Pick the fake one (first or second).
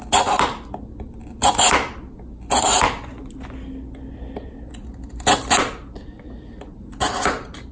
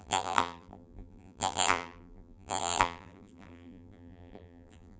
second